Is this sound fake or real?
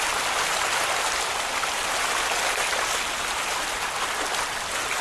real